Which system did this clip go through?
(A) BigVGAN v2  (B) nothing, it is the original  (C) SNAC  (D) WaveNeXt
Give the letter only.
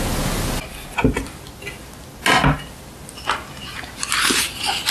B